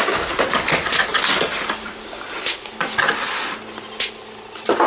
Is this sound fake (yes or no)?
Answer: no